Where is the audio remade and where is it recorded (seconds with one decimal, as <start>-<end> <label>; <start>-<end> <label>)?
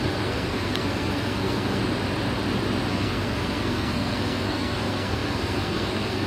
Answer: 0.0-1.8 remade; 1.8-2.9 recorded; 2.9-6.3 remade